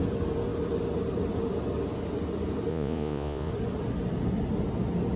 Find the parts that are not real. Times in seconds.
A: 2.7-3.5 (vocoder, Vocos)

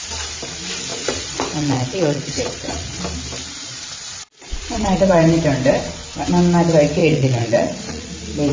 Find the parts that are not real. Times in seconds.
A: 0.9-3.0 (vocoder, Vocos); 3.6-5.2; 7.0-8.1

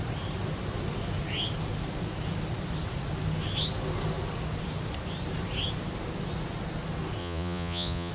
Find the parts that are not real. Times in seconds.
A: 7.2-8.1 (vocoder, Vocos)

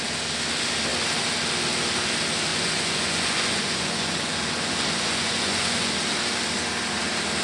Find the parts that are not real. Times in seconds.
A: 2.5-5.9 (vocoder, Vocos)